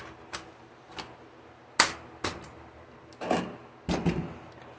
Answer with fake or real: real